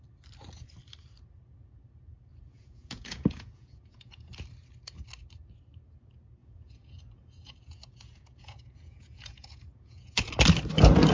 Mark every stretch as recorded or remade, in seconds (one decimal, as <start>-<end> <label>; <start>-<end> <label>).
0.0-2.3 recorded; 2.3-4.3 remade; 4.3-6.4 recorded; 6.4-10.3 remade; 10.3-11.1 recorded